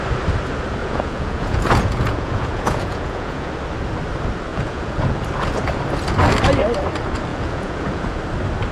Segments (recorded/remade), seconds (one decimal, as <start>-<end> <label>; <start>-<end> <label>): 0.0-0.8 recorded; 0.8-3.5 remade; 3.5-4.5 recorded; 4.5-5.2 remade; 5.2-7.3 recorded; 7.3-8.2 remade; 8.2-8.7 recorded